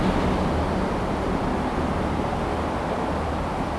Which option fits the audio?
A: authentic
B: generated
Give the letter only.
A